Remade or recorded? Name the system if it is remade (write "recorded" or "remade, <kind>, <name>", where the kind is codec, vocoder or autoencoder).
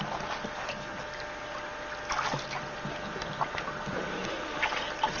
recorded